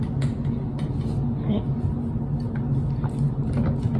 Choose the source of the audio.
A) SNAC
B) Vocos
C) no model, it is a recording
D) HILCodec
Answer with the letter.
C